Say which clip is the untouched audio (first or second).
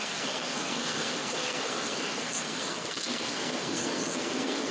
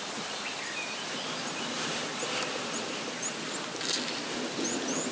second